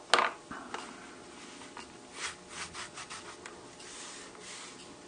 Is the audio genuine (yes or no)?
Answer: yes